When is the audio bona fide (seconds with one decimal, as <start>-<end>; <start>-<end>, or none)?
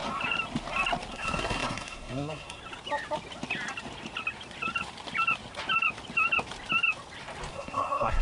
0.0-1.1; 2.6-7.5